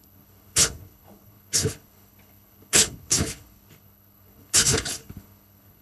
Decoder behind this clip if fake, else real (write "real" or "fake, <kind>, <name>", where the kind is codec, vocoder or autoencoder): fake, codec, HILCodec